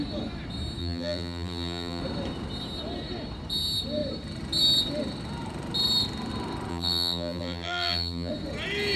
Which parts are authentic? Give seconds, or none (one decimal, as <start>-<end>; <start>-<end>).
0.0-0.8; 2.0-6.7; 8.3-9.0